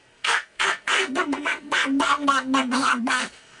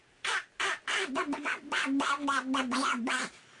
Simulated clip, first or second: first